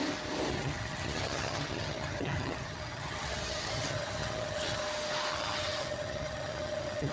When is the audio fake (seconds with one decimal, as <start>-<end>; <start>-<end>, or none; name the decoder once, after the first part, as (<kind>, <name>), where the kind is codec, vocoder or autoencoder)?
0.5-4.8 (vocoder, HiFi-GAN); 5.3-7.1